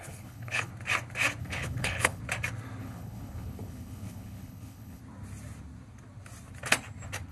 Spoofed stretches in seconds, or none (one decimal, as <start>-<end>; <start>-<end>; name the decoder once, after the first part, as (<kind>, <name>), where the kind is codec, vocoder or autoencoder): 0.0-0.7 (codec, HILCodec); 1.4-2.2; 2.8-5.0